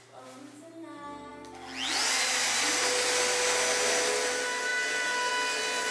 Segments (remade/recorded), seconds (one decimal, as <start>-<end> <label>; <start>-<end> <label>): 0.0-5.9 recorded